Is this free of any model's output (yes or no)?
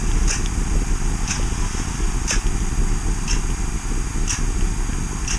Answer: yes